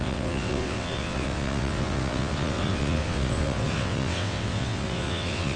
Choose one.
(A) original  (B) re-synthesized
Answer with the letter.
B